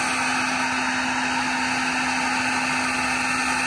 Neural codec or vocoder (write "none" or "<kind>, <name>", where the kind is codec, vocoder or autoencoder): none